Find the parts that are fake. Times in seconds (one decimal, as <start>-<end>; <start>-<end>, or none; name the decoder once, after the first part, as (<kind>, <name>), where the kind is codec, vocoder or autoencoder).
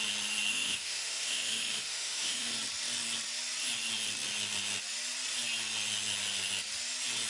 0.5-2.5 (autoencoder, DAC-VAE)